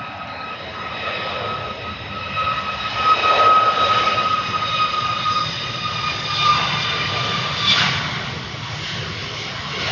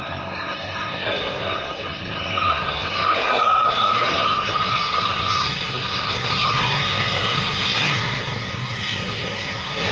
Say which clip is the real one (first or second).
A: first